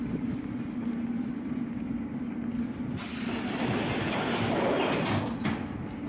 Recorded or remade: recorded